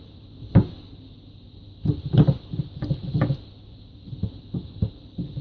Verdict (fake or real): real